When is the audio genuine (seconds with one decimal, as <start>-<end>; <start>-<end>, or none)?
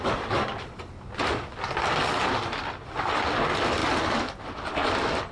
0.0-5.3